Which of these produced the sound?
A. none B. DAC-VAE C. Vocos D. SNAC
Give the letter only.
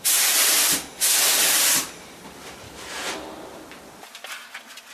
A